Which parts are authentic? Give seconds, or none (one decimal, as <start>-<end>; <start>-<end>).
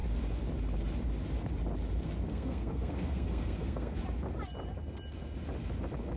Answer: 0.0-2.3; 4.0-6.2